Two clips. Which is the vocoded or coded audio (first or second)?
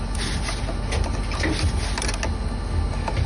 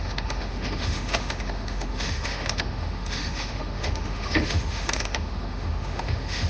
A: second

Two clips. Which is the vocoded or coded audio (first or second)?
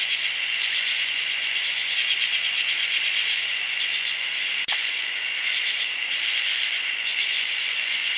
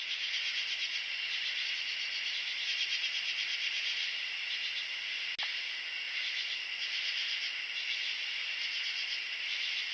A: first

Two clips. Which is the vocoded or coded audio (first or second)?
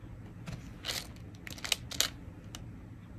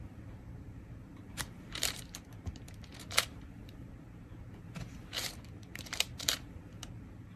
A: second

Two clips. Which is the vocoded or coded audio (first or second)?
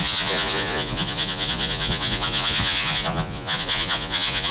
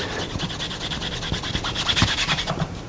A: first